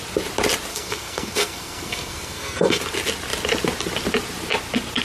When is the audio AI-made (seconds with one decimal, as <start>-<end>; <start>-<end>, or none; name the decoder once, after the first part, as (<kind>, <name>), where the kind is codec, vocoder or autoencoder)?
0.7-2.8 (codec, SNAC)